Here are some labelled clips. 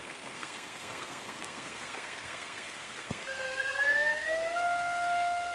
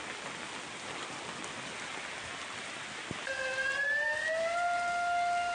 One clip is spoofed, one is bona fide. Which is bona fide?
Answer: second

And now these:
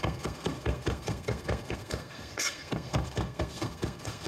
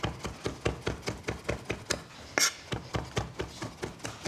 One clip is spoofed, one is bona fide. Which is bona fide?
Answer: second